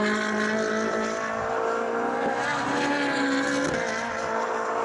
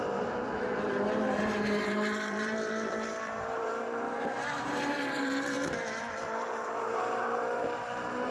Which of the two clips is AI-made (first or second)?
second